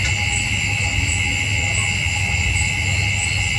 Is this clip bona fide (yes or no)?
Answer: yes